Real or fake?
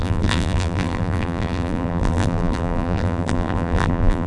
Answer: fake